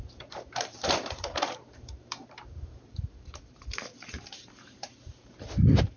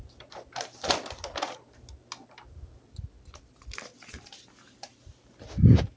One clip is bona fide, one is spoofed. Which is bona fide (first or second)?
second